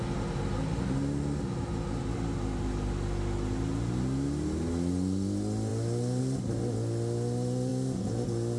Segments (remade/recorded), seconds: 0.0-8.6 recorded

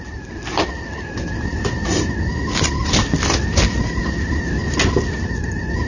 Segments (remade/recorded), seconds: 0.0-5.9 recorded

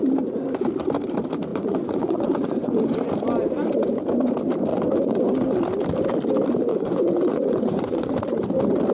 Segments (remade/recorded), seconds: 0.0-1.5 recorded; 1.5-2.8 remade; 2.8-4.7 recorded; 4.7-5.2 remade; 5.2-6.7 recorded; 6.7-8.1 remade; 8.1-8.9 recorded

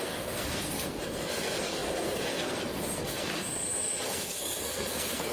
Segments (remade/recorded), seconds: 0.0-5.3 remade

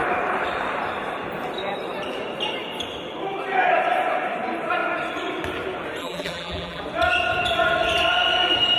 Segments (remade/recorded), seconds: 0.0-6.0 recorded; 6.0-6.8 remade; 6.8-8.8 recorded